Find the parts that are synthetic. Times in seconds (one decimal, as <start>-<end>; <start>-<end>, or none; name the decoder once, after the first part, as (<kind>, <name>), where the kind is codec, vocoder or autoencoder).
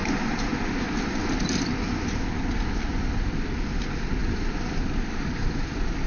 0.0-1.3 (vocoder, BigVGAN v2); 4.2-6.1